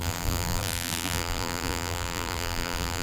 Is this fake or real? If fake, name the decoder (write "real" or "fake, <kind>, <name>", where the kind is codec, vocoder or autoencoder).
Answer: fake, vocoder, BigVGAN v2